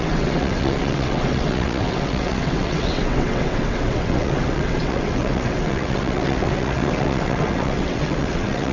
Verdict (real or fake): fake